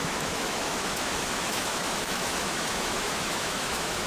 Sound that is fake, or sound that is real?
fake